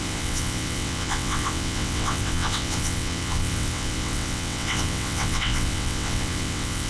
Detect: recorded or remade remade